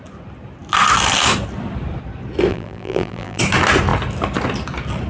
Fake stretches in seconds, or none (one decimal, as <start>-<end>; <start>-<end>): 2.5-3.4